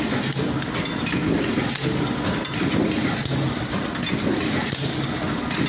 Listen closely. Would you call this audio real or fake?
real